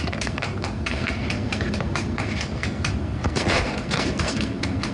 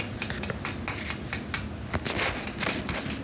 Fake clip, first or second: first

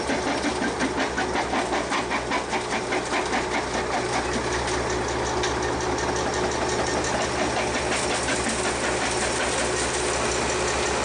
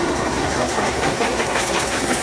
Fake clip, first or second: second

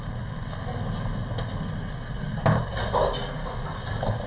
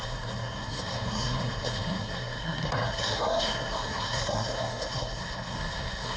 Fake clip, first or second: second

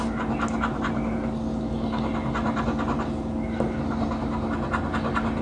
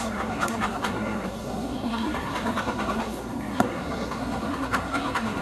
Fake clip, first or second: second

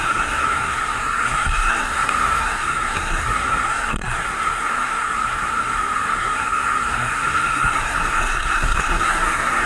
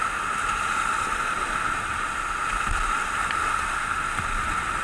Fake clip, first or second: first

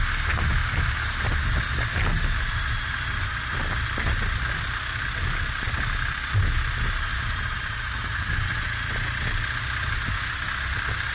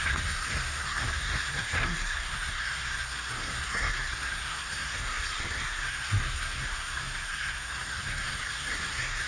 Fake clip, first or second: second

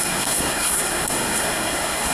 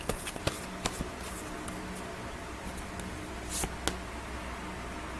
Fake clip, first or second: first